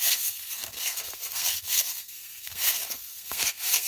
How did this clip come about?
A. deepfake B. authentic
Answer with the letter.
A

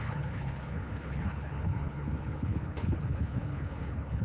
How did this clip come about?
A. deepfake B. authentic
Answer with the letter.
A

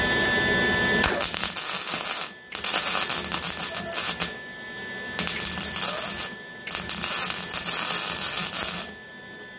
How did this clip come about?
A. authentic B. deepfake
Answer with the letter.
A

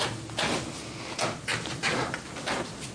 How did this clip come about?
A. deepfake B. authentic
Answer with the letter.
B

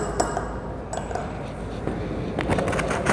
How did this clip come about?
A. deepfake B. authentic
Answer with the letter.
B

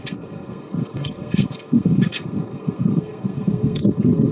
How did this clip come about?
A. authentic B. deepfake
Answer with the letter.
B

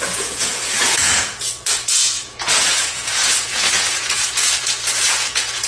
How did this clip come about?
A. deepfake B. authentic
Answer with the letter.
A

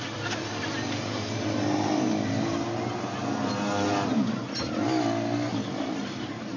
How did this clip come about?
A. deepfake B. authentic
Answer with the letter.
B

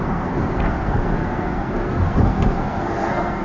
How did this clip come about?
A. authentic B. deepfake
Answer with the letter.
B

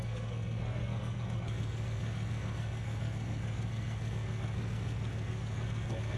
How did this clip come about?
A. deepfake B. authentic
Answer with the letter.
A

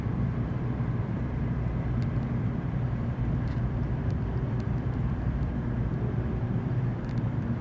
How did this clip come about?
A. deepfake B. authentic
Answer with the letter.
A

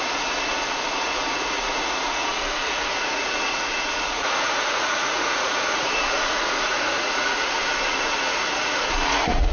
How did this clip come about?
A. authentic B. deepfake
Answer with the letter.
B